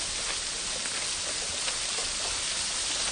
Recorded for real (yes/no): yes